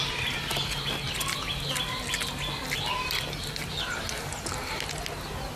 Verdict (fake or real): real